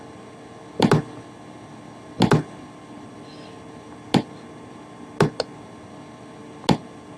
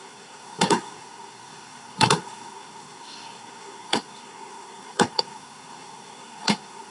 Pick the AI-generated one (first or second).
second